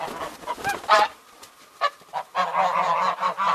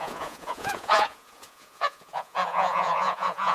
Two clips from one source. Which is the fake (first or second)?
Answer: second